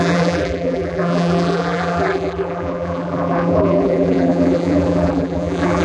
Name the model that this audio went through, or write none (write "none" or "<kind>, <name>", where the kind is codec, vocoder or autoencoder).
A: vocoder, BigVGAN v2